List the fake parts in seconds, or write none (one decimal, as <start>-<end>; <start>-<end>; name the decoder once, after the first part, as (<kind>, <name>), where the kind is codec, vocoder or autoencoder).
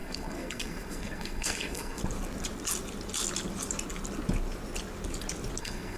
0.0-2.0 (codec, SNAC); 5.6-6.0